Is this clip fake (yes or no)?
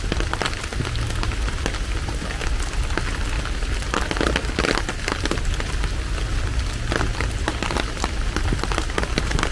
no